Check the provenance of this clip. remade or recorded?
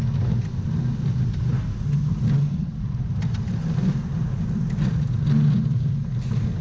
recorded